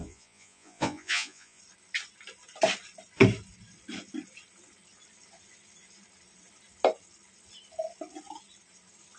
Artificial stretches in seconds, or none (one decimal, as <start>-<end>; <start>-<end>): 0.0-1.6